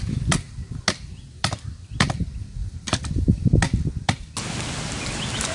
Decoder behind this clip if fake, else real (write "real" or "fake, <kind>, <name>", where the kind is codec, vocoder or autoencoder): real